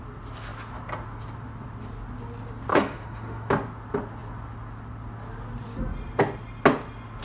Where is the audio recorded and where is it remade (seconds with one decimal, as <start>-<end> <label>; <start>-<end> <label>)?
0.0-2.7 recorded; 2.7-3.5 remade; 3.5-7.2 recorded